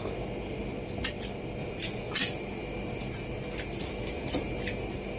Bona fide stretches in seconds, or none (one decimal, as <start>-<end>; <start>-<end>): 0.0-1.6; 2.1-5.2